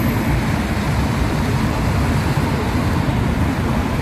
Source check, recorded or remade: recorded